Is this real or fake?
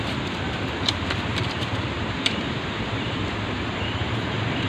fake